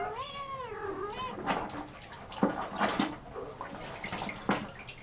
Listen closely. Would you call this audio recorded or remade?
recorded